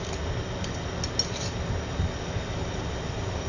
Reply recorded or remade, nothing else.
recorded